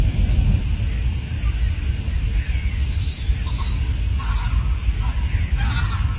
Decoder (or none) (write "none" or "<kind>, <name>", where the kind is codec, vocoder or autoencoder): none